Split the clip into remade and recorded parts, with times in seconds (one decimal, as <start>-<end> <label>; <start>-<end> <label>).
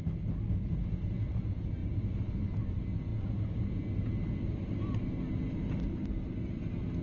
0.0-7.0 recorded